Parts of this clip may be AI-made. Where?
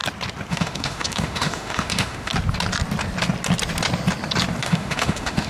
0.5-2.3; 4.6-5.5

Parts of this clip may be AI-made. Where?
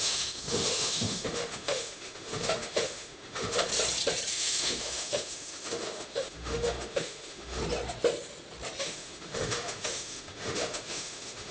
0.0-3.7; 4.3-7.6; 8.8-11.5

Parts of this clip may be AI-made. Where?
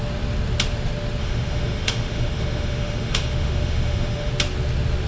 1.2-4.3